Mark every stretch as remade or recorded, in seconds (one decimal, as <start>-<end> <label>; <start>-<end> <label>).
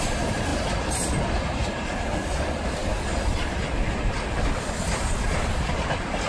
0.0-6.3 recorded